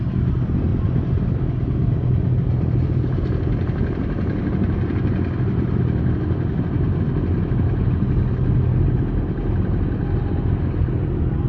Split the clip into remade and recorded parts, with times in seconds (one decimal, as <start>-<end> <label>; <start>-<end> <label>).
0.0-11.5 recorded